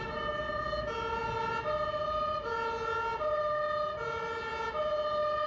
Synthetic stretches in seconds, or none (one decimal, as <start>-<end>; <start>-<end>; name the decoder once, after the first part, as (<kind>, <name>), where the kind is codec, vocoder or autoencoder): none